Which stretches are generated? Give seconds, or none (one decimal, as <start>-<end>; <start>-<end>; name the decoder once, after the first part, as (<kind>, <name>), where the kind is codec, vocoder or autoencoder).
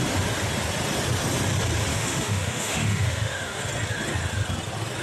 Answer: 1.9-3.6 (autoencoder, DAC-VAE)